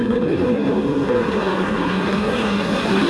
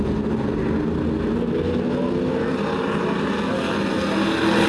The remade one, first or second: first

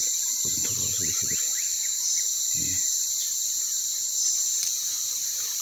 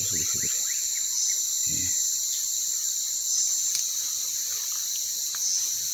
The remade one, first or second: first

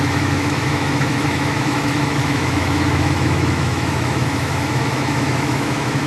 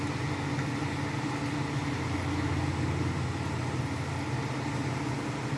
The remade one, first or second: first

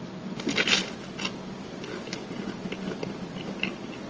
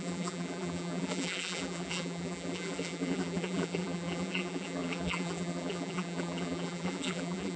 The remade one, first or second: second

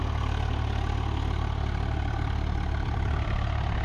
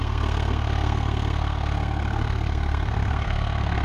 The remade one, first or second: second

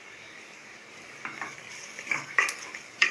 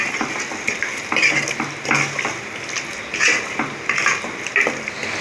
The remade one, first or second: first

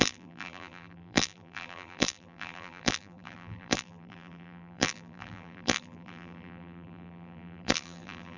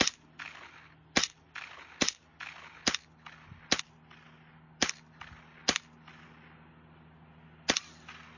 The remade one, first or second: first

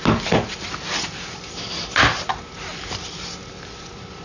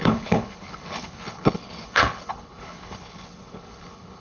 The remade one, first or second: second